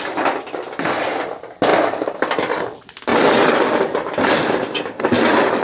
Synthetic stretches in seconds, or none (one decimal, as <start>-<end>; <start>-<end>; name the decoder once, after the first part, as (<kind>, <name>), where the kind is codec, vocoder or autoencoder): none